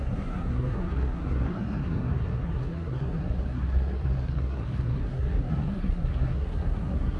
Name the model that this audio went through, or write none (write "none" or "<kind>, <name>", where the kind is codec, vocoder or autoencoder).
codec, SNAC